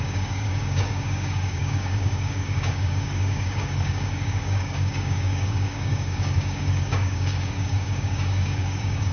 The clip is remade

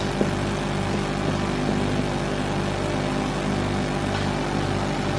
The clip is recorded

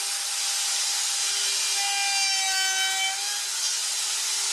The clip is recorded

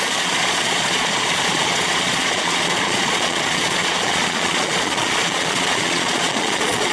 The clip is remade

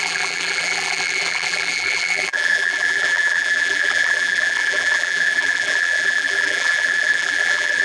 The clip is remade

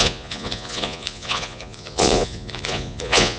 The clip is remade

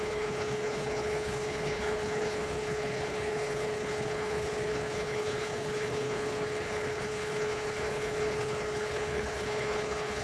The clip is remade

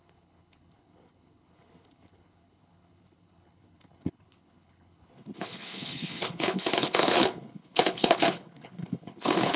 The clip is remade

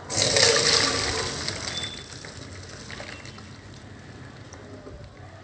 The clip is recorded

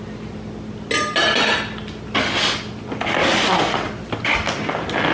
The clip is recorded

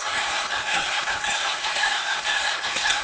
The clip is remade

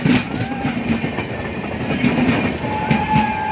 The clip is recorded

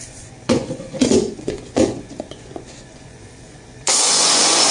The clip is remade